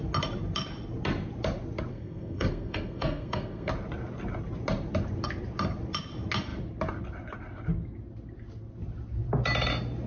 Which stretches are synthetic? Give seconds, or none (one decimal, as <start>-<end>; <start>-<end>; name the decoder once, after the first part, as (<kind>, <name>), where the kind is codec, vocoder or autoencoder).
1.9-3.7 (codec, SNAC)